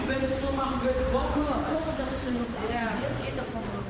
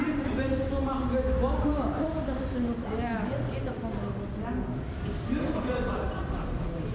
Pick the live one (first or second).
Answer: second